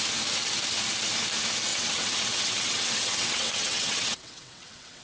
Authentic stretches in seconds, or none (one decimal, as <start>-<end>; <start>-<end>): 0.0-1.7

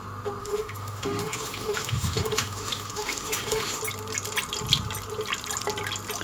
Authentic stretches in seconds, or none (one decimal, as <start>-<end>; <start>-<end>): 0.0-0.4; 3.8-6.2

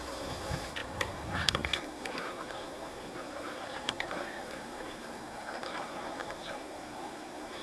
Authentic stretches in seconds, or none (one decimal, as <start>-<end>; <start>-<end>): none

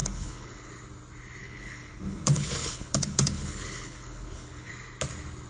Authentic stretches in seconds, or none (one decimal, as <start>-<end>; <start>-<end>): 0.7-1.4; 4.7-5.5

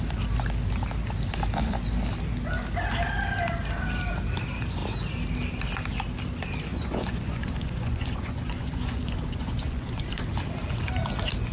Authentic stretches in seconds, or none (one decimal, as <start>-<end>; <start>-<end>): 0.0-6.7; 10.2-11.5

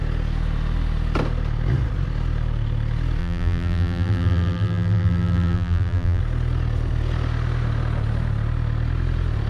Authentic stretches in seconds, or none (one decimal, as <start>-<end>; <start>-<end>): 0.0-3.2; 6.2-9.5